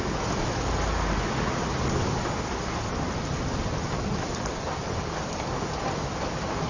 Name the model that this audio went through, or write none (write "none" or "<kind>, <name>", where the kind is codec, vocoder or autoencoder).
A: none